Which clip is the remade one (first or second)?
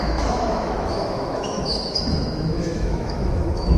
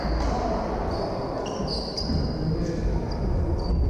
first